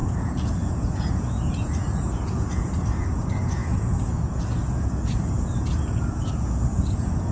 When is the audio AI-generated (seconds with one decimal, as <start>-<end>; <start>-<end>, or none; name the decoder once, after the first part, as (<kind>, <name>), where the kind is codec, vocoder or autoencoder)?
0.0-7.3 (vocoder, Vocos)